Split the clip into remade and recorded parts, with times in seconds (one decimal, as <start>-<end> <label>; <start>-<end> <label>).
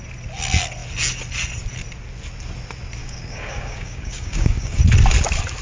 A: 0.0-3.0 recorded; 3.0-4.8 remade; 4.8-5.6 recorded